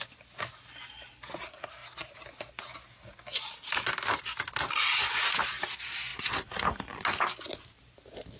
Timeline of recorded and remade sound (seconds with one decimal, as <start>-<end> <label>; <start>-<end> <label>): 0.0-8.4 recorded